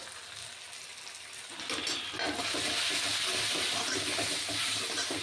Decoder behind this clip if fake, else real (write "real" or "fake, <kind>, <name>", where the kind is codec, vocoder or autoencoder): real